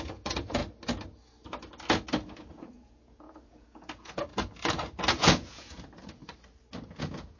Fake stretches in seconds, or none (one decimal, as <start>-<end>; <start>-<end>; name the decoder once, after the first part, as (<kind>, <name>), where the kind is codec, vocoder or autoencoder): 0.0-0.6 (vocoder, Vocos); 2.5-4.3; 5.1-6.2; 7.0-7.4